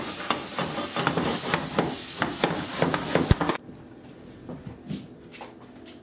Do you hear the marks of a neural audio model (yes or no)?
no